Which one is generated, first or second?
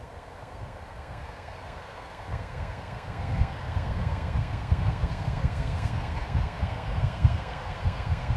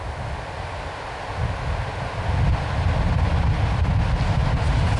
first